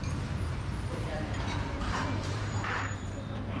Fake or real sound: fake